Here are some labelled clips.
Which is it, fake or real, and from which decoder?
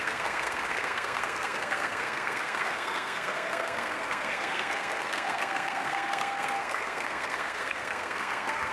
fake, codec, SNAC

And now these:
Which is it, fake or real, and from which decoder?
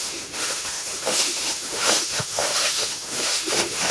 fake, autoencoder, DAC-VAE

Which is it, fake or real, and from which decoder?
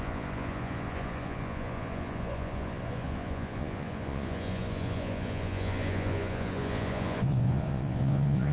fake, vocoder, Vocos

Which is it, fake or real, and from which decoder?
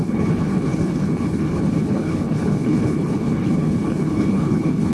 fake, codec, HILCodec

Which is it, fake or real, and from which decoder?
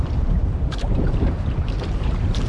fake, vocoder, BigVGAN v2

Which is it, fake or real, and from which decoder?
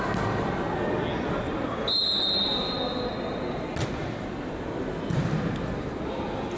real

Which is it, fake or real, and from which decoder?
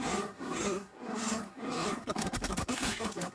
fake, codec, SNAC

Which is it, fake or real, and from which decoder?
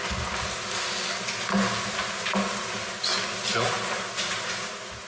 real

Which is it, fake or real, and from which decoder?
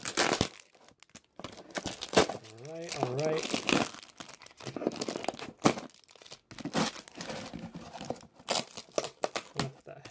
real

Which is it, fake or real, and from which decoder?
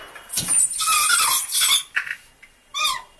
real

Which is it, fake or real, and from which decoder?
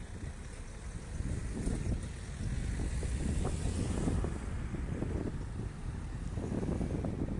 real